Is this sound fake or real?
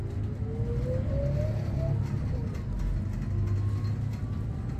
real